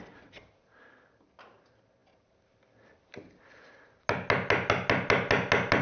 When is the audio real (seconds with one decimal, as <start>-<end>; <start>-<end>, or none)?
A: 0.0-5.8